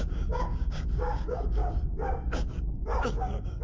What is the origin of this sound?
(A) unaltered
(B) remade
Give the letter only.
B